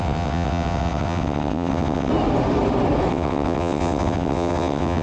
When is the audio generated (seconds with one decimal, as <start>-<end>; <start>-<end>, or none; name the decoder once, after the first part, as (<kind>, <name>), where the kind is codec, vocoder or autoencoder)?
0.0-2.1 (vocoder, WaveNeXt); 3.1-5.0

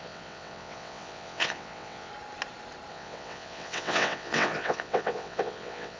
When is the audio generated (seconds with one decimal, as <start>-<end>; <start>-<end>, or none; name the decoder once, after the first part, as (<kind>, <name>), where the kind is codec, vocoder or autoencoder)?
0.0-2.1 (vocoder, WaveNeXt); 2.9-6.0

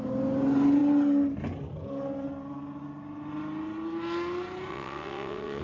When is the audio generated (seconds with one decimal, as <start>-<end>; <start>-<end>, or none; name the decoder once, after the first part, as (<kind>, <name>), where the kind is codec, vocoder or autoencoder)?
4.7-5.6 (vocoder, WaveNeXt)

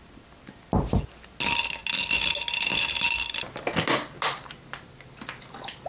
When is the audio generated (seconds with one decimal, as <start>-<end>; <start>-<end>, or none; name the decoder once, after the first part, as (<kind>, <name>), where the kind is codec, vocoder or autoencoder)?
none

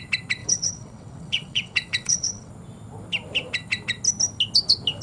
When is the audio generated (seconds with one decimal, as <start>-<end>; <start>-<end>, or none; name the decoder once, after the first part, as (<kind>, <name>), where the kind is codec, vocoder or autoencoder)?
0.4-2.5 (vocoder, WaveNeXt)